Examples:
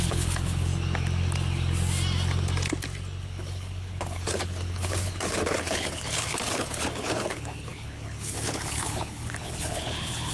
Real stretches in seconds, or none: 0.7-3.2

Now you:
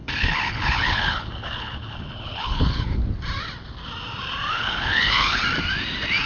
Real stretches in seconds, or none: 3.0-4.5; 5.4-6.3

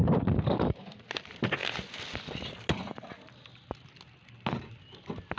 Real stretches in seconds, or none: 0.0-5.4

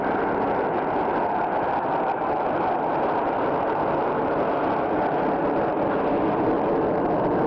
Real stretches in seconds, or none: 0.0-7.5